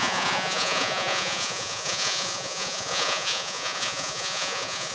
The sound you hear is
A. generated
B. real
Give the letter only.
A